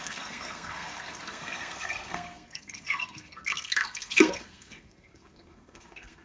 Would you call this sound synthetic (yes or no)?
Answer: yes